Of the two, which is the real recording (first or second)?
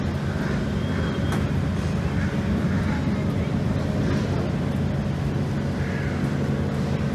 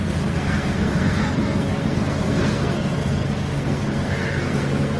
first